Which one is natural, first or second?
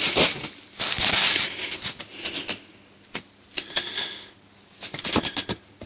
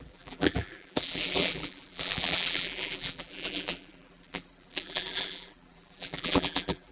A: first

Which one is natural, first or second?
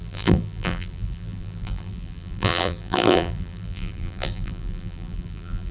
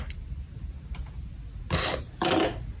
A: second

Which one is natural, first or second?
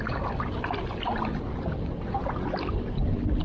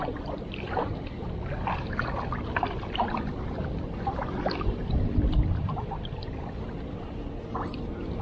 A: first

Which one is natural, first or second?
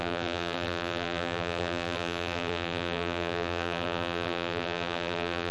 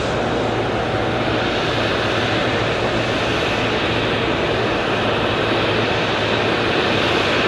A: second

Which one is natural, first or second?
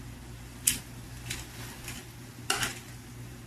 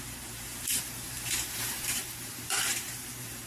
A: first